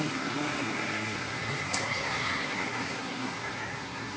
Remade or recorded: remade